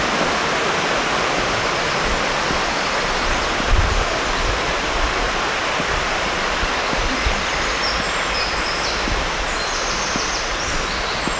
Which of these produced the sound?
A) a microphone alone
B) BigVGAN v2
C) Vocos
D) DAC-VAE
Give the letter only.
B